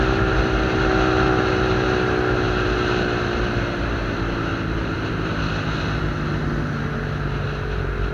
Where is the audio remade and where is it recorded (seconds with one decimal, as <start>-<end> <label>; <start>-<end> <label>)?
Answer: 0.0-4.5 recorded; 4.5-5.1 remade; 5.1-8.1 recorded